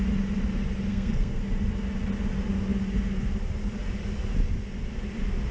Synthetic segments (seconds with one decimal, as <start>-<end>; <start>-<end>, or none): 0.9-1.4